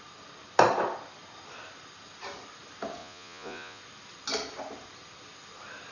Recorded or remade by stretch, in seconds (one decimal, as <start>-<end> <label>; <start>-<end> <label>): 0.0-3.0 recorded; 3.0-3.8 remade; 3.8-5.9 recorded